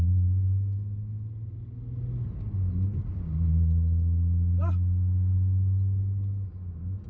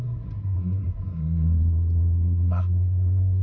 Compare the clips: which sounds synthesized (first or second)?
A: second